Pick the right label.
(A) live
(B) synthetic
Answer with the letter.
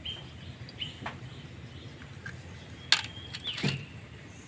A